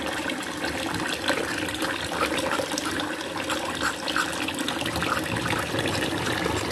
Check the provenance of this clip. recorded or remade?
recorded